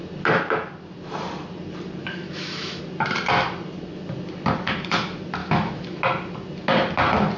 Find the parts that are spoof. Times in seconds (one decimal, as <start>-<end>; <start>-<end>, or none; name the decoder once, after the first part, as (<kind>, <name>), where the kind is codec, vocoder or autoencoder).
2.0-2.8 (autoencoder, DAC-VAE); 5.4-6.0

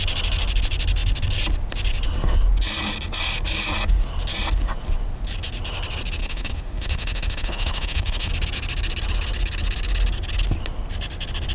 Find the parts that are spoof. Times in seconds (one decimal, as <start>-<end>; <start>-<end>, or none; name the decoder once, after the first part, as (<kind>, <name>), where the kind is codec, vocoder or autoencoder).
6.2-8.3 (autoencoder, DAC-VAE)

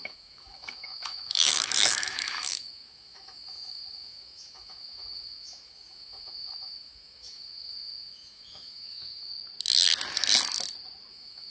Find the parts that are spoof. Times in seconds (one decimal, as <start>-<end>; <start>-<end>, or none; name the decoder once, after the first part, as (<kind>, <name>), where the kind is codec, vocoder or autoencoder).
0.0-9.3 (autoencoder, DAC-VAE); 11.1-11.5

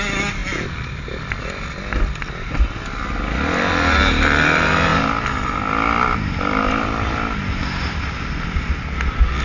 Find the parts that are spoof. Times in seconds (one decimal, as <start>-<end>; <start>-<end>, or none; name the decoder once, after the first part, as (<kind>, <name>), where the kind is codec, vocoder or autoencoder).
none